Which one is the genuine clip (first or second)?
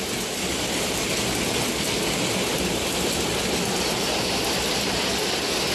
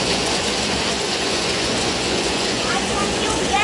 first